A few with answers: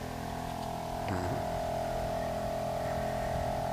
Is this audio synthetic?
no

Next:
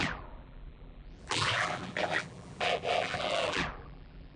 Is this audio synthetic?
yes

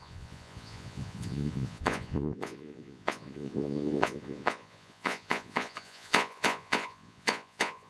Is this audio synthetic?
yes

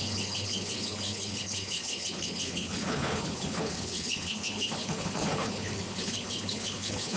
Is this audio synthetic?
yes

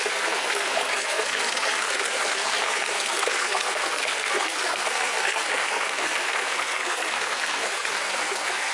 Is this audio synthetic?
yes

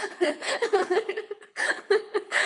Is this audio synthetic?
yes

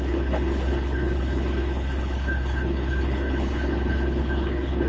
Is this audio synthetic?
yes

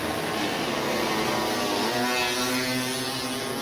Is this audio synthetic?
no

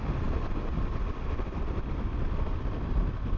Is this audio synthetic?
no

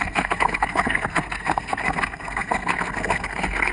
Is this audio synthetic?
yes